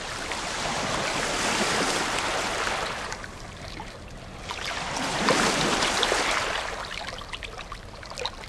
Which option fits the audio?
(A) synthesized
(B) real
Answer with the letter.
B